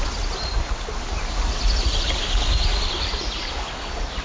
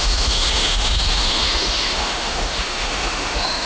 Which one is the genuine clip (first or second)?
first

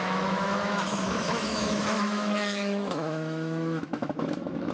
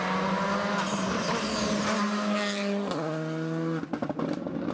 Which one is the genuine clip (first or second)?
second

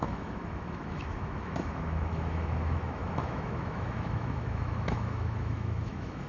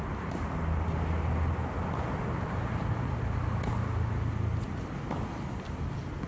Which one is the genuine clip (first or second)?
second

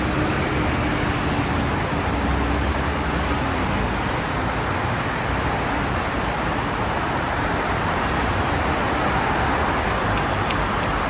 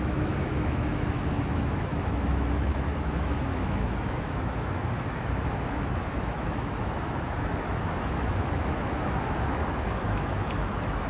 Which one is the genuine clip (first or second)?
first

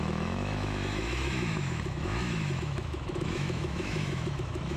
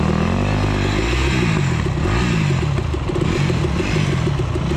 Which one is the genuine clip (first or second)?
second